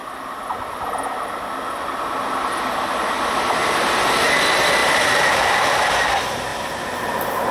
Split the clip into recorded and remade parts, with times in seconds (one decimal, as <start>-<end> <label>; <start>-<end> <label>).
0.0-4.8 recorded; 4.8-5.9 remade; 5.9-6.5 recorded; 6.5-7.5 remade